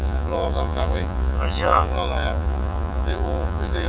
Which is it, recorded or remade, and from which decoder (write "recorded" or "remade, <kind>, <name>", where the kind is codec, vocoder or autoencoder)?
remade, vocoder, Vocos